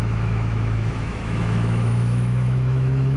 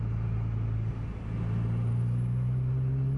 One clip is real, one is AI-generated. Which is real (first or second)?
second